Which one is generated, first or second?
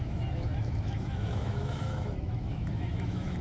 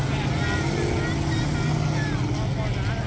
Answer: first